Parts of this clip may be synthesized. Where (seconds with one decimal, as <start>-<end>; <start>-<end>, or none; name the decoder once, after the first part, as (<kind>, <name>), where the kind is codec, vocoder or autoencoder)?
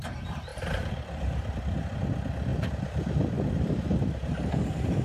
0.5-1.7 (vocoder, BigVGAN v2); 2.5-5.0